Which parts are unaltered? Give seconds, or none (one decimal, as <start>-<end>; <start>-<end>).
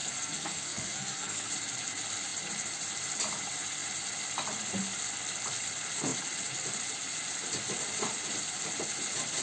1.5-9.4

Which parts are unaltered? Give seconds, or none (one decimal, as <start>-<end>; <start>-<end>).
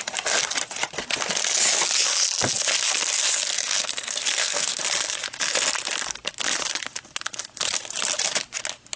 0.0-3.5; 4.8-9.0